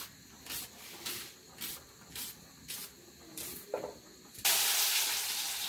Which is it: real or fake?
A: real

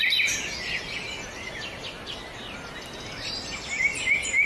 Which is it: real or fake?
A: real